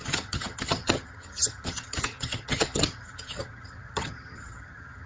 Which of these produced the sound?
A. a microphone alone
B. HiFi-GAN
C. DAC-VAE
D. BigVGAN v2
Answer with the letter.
B